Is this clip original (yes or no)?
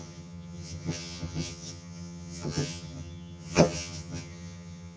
no